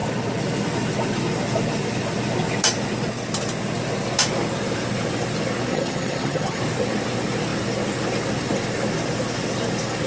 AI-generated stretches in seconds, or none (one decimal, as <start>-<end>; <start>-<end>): 5.7-6.6